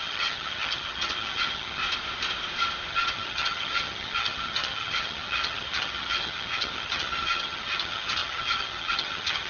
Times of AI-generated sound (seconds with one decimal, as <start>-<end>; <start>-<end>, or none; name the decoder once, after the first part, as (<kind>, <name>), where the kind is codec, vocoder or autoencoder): 0.0-1.8 (vocoder, HiFi-GAN); 2.9-9.5